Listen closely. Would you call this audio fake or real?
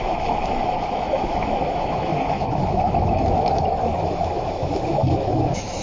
fake